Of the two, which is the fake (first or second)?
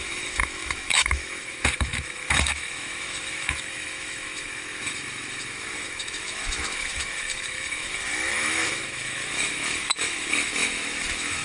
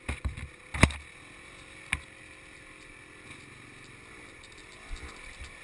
first